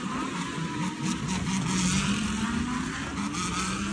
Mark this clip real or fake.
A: real